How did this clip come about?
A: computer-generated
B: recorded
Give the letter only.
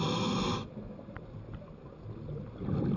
B